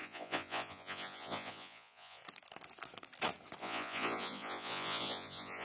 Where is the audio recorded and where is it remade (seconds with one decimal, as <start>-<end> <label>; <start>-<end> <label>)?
0.0-2.2 remade; 2.2-3.6 recorded; 3.6-5.6 remade